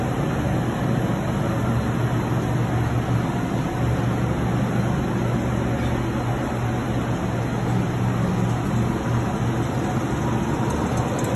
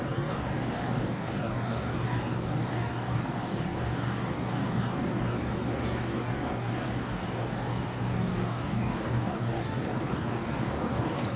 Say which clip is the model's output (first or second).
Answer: second